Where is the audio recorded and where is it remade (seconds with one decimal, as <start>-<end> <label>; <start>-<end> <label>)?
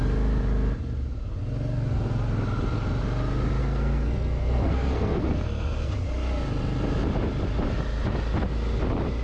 0.0-3.6 recorded; 3.6-5.9 remade; 5.9-9.2 recorded